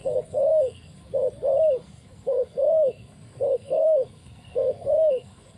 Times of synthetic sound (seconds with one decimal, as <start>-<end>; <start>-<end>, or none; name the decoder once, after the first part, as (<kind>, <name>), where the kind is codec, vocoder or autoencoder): 0.0-1.1 (codec, SNAC); 1.8-5.6